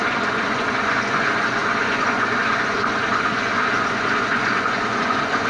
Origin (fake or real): fake